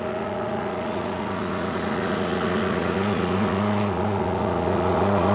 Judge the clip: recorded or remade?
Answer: remade